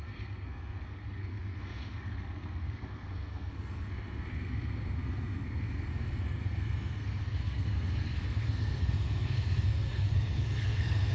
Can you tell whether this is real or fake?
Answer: fake